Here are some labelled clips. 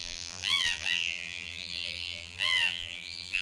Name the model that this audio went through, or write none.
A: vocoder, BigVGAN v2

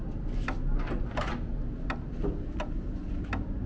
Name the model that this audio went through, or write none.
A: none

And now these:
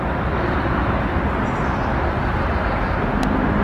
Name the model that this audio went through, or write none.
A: none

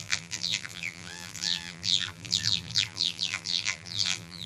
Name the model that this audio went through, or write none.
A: vocoder, BigVGAN v2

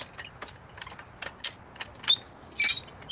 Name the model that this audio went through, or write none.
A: none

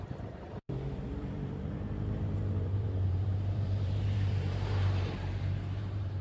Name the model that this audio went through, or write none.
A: vocoder, BigVGAN v2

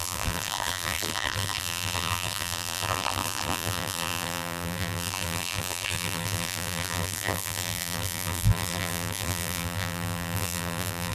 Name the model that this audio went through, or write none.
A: vocoder, BigVGAN v2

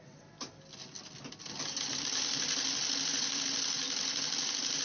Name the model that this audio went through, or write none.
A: none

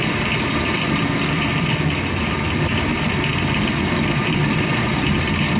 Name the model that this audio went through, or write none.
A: vocoder, BigVGAN v2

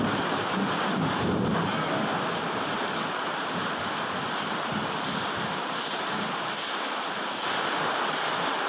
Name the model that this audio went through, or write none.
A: vocoder, BigVGAN v2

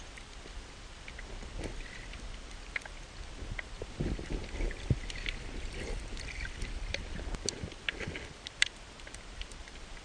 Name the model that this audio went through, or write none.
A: none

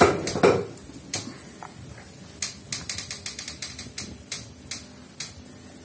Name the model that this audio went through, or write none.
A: none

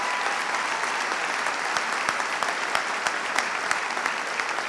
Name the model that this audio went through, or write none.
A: none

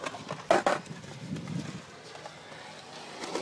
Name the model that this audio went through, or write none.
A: none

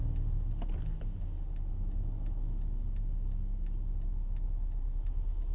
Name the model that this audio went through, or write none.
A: none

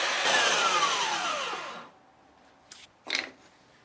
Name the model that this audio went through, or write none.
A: none